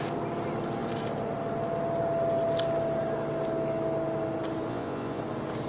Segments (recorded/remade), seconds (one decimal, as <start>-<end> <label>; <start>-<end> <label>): 0.0-4.7 recorded; 4.7-5.2 remade; 5.2-5.7 recorded